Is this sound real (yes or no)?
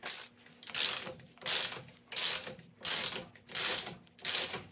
yes